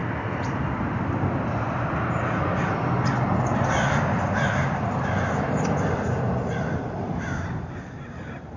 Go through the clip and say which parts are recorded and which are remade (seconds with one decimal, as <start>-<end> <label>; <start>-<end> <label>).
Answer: 0.0-1.9 remade; 1.9-3.5 recorded; 3.5-8.6 remade